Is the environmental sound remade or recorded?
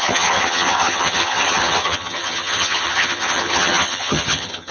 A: remade